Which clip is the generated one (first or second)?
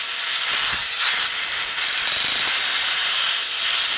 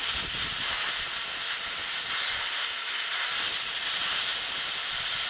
second